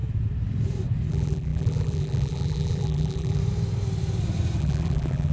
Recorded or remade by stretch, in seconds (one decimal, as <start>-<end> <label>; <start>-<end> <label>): 0.0-1.1 recorded; 1.1-3.4 remade; 3.4-4.6 recorded; 4.6-5.3 remade